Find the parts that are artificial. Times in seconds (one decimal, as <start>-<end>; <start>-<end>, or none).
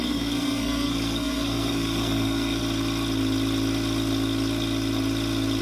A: 0.0-2.6